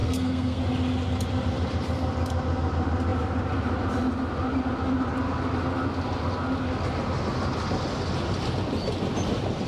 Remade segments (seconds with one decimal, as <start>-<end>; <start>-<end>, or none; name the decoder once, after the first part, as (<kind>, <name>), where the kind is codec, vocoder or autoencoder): 0.0-0.6 (codec, SNAC)